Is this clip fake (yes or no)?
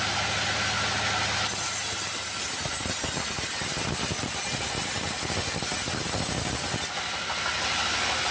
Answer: no